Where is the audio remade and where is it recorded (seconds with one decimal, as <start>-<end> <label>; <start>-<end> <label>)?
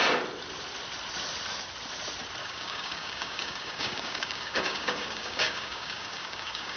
0.0-2.4 recorded; 2.4-6.8 remade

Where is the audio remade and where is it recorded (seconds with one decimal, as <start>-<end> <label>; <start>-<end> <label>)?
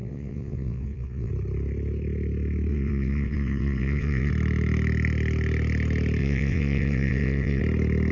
0.0-1.3 remade; 1.3-2.7 recorded; 2.7-4.3 remade; 4.3-6.2 recorded; 6.2-7.6 remade; 7.6-8.1 recorded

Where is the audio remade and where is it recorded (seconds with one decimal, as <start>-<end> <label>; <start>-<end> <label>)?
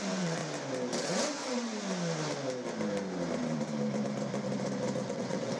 0.0-0.4 remade; 0.4-1.0 recorded; 1.0-1.7 remade; 1.7-5.1 recorded; 5.1-5.6 remade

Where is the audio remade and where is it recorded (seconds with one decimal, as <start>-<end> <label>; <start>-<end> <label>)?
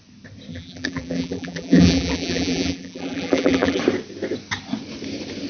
0.0-0.5 recorded; 0.5-3.8 remade; 3.8-5.5 recorded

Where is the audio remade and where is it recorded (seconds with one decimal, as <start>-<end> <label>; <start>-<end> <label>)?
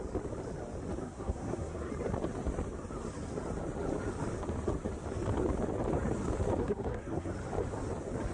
0.0-1.0 recorded; 1.0-1.9 remade; 1.9-6.6 recorded; 6.6-7.3 remade; 7.3-8.3 recorded